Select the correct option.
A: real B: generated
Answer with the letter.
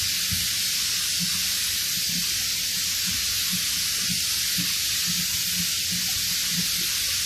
A